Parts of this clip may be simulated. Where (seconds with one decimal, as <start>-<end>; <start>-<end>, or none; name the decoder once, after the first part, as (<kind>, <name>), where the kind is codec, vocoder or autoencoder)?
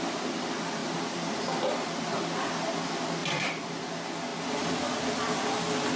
0.8-2.2 (vocoder, BigVGAN v2); 3.2-3.9